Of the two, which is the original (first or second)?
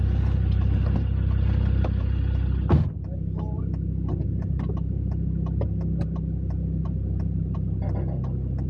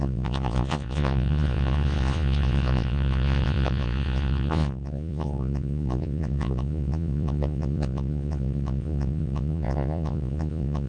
first